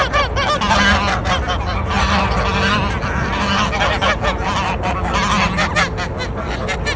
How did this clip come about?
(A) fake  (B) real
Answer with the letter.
B